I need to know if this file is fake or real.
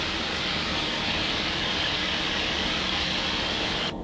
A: fake